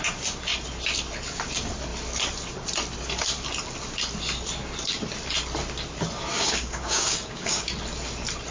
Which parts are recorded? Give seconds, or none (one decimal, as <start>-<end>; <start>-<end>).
0.0-6.3; 7.7-8.5